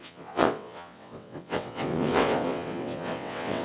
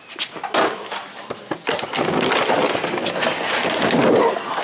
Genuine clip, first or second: second